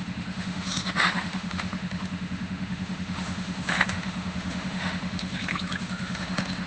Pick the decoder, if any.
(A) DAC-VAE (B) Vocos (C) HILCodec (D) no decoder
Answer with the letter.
A